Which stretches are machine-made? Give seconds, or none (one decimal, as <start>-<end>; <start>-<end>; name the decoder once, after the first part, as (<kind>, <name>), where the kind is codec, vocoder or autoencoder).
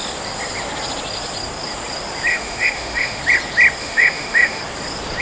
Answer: 2.3-3.2 (autoencoder, DAC-VAE); 3.8-4.6